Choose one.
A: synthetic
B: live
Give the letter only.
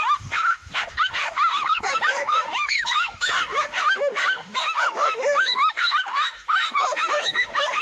A